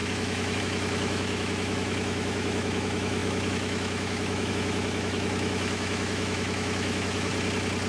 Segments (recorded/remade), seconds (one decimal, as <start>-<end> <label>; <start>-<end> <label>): 0.0-7.3 remade; 7.3-7.9 recorded